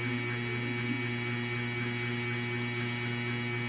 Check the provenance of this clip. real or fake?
real